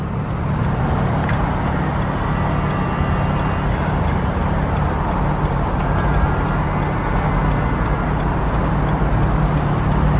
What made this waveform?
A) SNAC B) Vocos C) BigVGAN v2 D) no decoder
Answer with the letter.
D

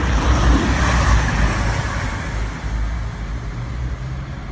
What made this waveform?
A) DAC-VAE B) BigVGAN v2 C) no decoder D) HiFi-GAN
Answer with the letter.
C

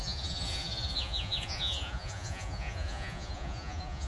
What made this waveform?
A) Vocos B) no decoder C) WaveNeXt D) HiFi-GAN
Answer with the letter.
A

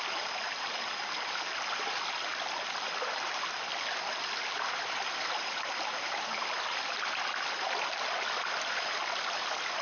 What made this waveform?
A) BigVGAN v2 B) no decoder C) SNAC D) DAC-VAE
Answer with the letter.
B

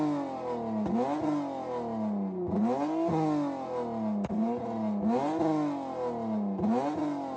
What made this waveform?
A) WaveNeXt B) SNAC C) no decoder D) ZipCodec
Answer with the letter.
C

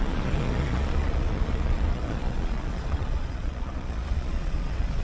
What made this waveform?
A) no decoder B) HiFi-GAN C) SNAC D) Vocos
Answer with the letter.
D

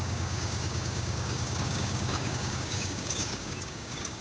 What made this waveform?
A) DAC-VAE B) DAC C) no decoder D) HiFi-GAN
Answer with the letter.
B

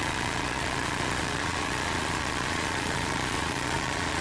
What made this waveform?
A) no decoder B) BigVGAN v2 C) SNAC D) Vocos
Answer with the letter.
D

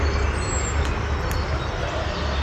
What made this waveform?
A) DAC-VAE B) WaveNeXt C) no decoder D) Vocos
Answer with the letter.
C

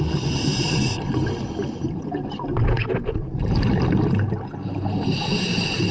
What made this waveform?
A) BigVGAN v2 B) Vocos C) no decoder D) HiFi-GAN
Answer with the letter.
C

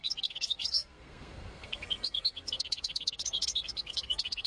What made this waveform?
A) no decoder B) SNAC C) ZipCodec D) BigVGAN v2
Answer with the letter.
B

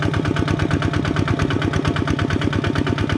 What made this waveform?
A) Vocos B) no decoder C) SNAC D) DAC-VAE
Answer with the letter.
B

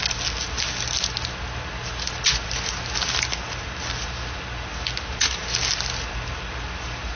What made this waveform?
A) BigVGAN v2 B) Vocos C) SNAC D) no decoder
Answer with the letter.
D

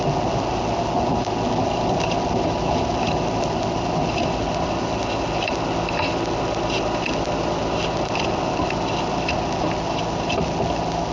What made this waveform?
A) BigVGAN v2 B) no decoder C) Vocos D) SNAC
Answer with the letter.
B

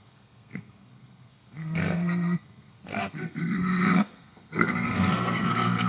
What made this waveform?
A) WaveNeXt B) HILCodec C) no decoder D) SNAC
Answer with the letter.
D